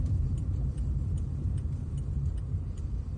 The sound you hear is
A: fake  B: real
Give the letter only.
A